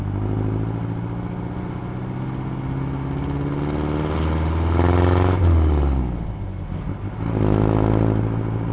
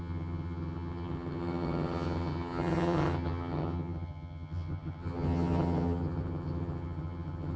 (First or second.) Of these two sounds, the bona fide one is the first